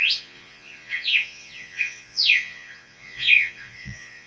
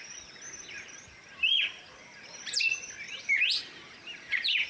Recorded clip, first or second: second